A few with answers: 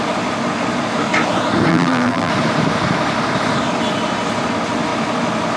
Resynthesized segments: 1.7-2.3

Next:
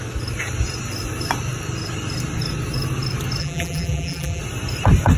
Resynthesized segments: 3.4-4.4

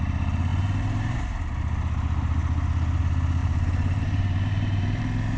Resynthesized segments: 0.5-1.2; 3.4-5.0

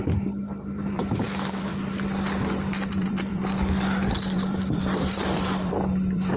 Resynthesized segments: 0.0-1.7; 2.9-3.3; 4.2-6.4

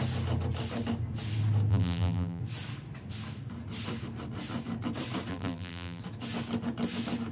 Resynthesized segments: 1.7-2.4; 5.3-6.0